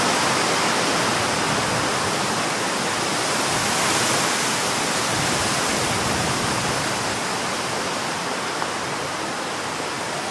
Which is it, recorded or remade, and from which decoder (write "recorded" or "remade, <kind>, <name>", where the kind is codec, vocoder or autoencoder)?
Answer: recorded